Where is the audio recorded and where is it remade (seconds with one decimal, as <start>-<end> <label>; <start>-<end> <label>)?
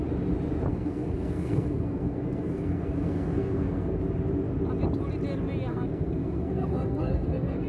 0.0-0.7 recorded; 0.7-4.0 remade; 4.0-5.7 recorded; 5.7-7.7 remade